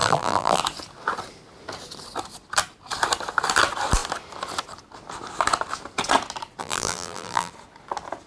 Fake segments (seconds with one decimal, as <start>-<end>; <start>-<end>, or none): 0.0-0.6; 6.6-7.5

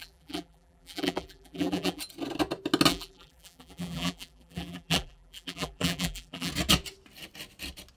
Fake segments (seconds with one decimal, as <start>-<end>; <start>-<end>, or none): 0.0-2.0; 2.9-6.5

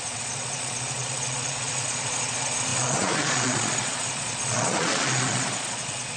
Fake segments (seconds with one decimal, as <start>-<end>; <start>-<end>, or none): 0.0-6.2